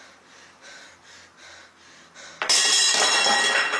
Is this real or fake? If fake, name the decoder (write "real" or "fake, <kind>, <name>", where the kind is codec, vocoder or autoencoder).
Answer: real